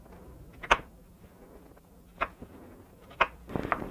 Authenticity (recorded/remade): recorded